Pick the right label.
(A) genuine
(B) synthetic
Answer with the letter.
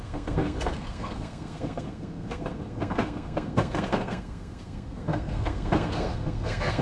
B